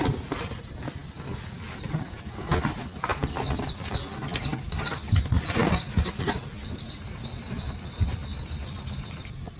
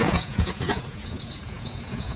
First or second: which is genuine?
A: first